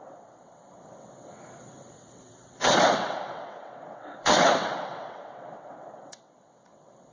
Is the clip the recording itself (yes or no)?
no